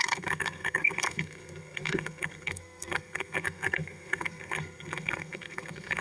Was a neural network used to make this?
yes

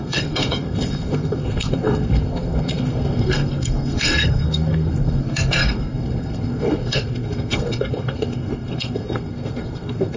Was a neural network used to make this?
yes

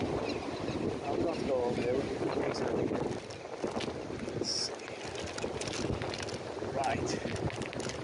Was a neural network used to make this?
no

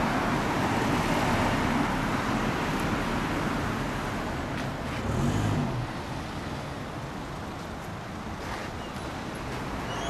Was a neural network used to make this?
no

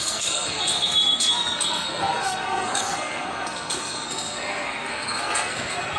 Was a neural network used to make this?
yes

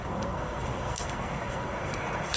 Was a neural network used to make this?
yes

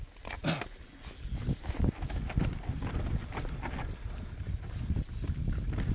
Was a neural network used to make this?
no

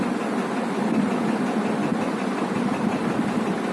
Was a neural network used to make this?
no